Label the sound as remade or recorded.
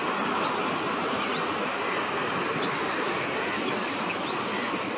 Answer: recorded